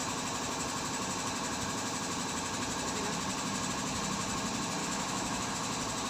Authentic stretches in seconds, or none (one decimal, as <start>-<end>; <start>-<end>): 0.0-4.8; 5.5-6.1